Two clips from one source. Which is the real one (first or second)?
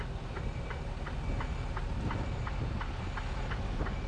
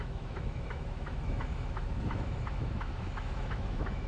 first